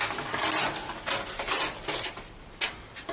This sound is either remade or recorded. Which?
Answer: recorded